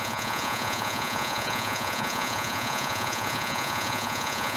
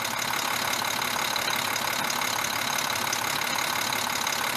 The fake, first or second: first